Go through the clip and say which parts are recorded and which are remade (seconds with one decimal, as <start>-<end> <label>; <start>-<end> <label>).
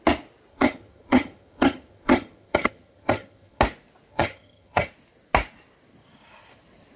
0.0-0.5 recorded; 0.5-3.6 remade; 3.6-4.1 recorded; 4.1-4.9 remade; 4.9-7.0 recorded